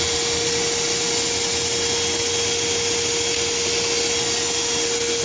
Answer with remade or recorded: recorded